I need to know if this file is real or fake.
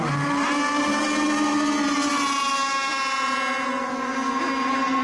real